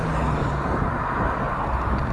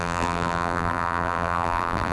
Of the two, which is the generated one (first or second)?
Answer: second